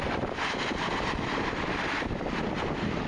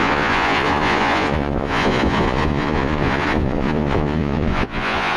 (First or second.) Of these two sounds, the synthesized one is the second